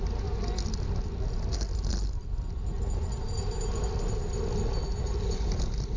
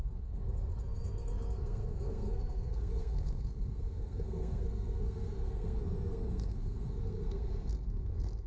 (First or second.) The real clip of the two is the first